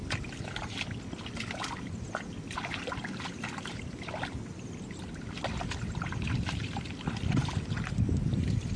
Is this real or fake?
real